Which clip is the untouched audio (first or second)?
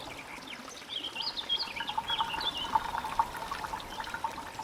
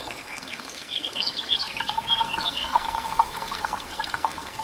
first